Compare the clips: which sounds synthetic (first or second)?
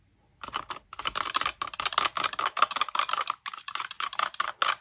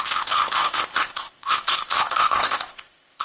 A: second